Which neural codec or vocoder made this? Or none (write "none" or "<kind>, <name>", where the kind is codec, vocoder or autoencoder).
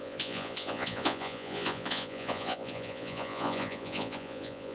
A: vocoder, Vocos